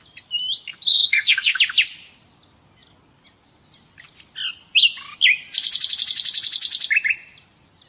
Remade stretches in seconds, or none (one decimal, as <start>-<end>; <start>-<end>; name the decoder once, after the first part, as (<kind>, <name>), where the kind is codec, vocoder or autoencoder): 0.9-1.6 (codec, SNAC)